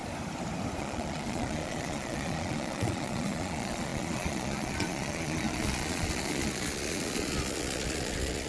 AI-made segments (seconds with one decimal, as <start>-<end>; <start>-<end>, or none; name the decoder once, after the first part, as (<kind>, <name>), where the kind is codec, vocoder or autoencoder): 0.8-8.5 (vocoder, Vocos)